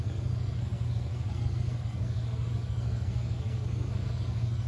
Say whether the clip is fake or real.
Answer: fake